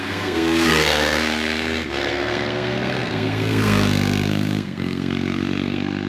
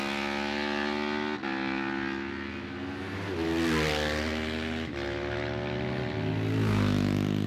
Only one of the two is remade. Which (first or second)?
first